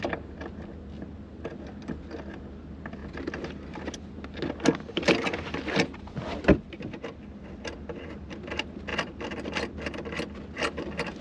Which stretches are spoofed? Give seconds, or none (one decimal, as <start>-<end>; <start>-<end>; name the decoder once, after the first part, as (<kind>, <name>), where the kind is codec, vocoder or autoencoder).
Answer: none

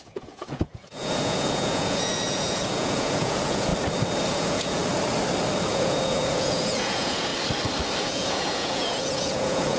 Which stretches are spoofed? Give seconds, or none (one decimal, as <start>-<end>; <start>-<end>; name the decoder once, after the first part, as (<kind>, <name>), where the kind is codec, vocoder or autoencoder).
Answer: 0.0-3.7 (vocoder, Vocos); 4.3-4.8; 5.7-7.3; 8.0-9.8

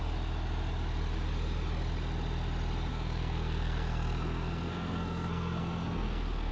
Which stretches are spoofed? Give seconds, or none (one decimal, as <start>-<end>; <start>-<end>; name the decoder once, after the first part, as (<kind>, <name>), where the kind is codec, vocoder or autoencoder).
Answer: 2.9-6.5 (codec, SNAC)

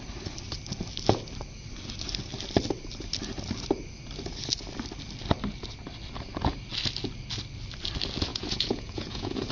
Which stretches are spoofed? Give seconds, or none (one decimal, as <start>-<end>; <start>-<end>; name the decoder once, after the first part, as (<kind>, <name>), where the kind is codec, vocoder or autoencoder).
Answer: 8.3-9.5 (vocoder, Vocos)

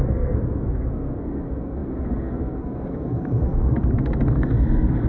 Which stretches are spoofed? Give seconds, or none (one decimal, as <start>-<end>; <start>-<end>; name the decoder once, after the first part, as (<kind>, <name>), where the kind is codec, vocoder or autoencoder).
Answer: 0.0-5.1 (codec, SNAC)

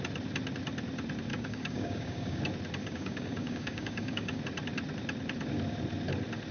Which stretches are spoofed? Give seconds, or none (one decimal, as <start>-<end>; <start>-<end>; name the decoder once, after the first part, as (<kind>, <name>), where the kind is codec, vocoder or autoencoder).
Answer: 1.3-2.4 (codec, DAC); 2.8-4.4

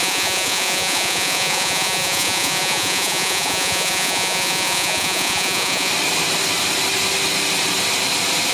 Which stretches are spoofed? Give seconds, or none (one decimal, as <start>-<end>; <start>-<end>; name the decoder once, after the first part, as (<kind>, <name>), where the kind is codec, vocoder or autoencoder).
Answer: 0.0-5.9 (vocoder, Vocos)